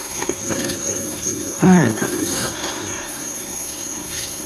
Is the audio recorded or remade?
remade